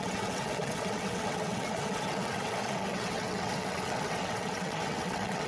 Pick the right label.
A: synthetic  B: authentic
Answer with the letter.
A